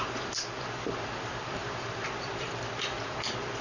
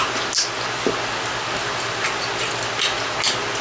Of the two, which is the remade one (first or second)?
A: first